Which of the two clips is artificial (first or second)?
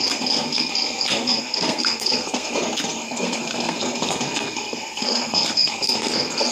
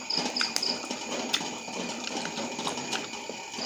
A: first